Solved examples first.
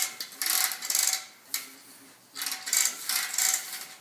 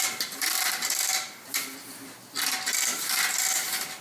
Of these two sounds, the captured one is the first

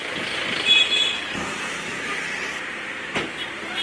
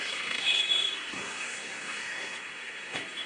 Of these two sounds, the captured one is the first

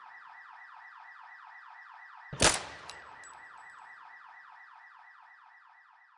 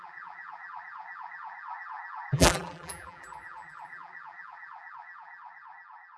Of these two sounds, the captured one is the first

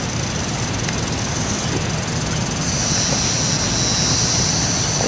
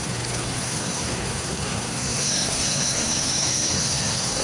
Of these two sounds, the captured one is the first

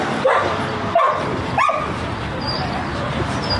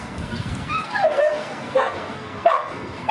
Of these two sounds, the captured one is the first